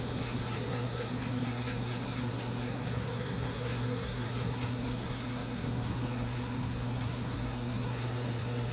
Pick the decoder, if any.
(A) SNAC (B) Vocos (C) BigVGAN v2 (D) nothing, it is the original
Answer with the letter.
A